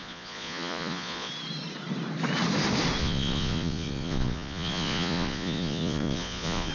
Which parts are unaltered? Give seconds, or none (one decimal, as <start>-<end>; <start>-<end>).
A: 1.3-3.0